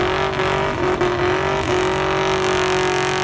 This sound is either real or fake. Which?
real